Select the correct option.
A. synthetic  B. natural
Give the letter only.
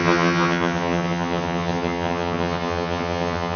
A